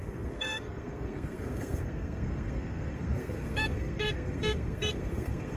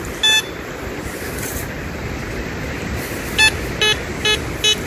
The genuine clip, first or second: second